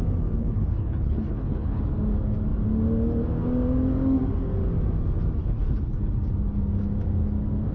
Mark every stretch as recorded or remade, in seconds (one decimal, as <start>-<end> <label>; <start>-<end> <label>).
0.0-0.4 recorded; 0.4-1.8 remade; 1.8-5.4 recorded; 5.4-6.0 remade; 6.0-7.7 recorded